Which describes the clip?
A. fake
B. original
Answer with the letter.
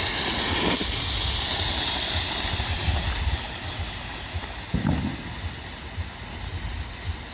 B